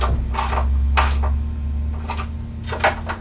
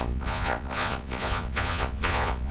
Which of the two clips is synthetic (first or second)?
second